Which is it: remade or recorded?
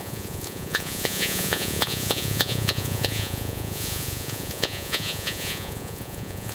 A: remade